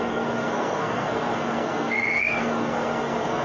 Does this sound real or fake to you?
fake